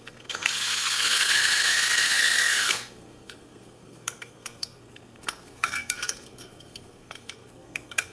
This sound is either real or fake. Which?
fake